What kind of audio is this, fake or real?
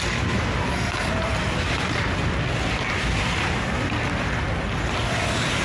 real